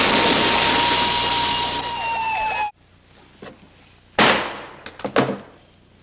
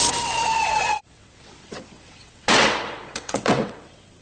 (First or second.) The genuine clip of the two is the first